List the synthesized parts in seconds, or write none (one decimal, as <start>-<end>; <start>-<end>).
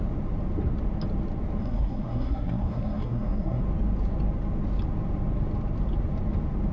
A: 1.6-3.6